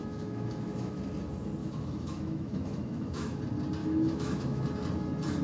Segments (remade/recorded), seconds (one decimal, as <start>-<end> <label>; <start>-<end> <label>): 0.0-1.0 remade; 1.0-1.6 recorded; 1.6-3.4 remade; 3.4-3.8 recorded; 3.8-4.6 remade; 4.6-5.4 recorded